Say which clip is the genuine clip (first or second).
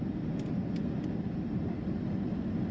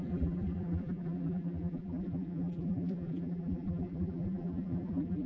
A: first